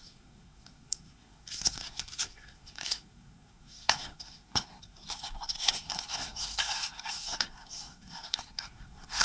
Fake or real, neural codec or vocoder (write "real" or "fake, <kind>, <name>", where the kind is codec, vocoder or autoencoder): fake, codec, SNAC